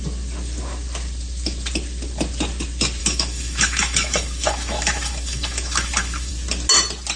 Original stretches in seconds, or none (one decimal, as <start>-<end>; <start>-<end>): 0.0-3.0; 6.3-7.2